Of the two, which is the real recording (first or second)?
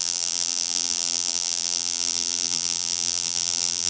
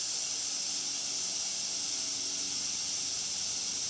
second